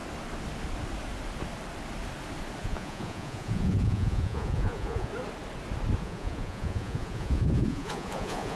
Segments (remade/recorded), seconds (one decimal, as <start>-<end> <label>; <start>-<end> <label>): 0.0-2.6 recorded; 2.6-5.1 remade; 5.1-6.0 recorded; 6.0-8.6 remade